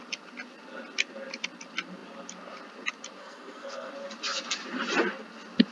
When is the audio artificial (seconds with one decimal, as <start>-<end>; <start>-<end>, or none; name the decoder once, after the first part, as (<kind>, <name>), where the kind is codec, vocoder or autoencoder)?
3.2-3.9 (codec, SNAC)